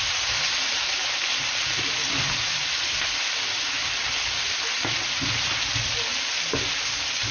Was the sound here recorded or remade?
recorded